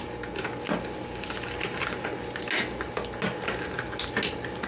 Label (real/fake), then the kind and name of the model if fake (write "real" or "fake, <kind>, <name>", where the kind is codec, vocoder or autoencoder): real